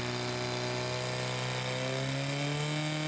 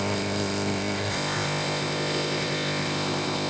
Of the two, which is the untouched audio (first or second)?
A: first